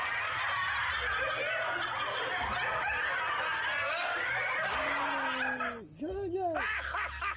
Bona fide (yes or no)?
yes